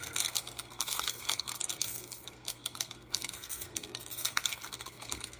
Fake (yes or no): yes